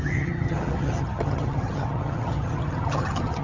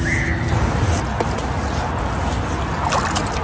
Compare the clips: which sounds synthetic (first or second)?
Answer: first